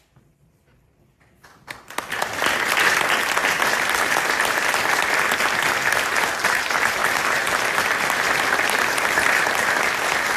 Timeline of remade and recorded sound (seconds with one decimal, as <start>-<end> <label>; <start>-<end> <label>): 0.0-3.4 recorded; 3.4-4.1 remade; 4.1-10.4 recorded